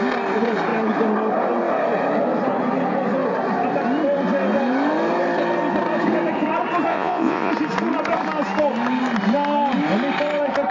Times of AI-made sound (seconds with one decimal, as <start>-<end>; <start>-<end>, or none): 6.9-7.5